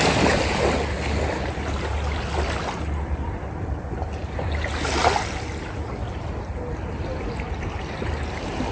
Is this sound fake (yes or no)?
no